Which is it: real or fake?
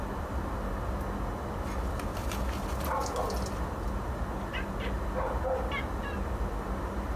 real